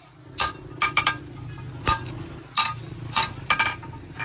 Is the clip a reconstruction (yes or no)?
no